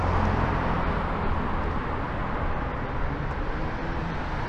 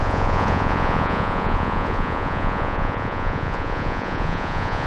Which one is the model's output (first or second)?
second